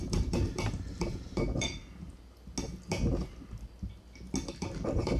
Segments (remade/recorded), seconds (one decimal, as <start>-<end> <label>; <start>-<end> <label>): 0.0-1.8 remade; 1.8-4.6 recorded; 4.6-5.2 remade